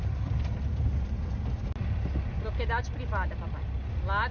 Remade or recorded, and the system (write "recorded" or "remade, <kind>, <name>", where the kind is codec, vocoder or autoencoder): recorded